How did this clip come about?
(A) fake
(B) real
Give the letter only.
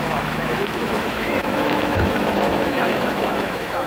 A